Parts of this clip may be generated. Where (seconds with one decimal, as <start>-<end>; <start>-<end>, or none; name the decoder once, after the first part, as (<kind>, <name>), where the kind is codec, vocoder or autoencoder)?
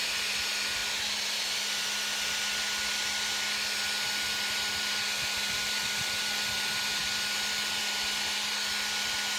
none